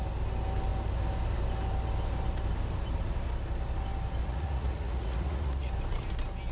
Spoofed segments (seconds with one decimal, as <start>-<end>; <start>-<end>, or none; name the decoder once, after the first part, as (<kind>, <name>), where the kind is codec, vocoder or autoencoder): 4.2-5.7 (vocoder, Vocos)

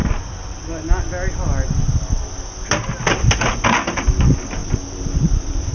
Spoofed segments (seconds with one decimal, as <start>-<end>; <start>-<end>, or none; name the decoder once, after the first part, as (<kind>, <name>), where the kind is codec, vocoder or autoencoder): none

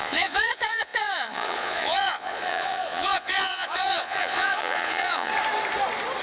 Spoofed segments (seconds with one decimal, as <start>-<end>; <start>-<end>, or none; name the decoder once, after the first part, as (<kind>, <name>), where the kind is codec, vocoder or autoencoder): 0.0-5.3 (vocoder, Vocos)

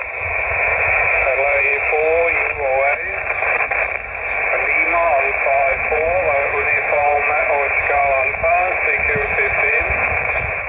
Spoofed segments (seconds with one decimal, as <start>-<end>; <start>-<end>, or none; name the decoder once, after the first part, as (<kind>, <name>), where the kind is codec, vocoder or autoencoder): 0.0-1.7 (vocoder, Vocos); 5.5-8.0; 8.7-10.7

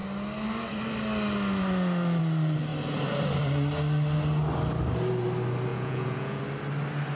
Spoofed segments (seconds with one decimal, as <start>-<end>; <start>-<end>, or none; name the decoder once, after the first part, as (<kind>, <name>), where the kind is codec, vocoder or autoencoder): 5.7-6.4 (vocoder, Vocos)

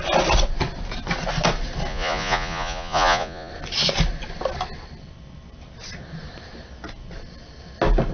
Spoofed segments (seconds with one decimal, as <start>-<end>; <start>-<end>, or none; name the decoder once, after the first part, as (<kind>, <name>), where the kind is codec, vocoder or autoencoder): 1.9-3.5 (vocoder, Vocos)

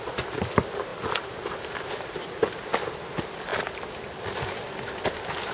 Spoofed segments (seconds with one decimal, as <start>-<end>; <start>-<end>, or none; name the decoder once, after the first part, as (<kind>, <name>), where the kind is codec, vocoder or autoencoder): none